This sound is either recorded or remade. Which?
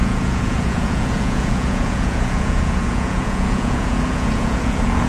remade